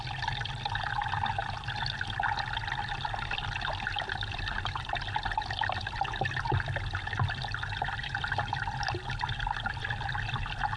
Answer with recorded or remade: recorded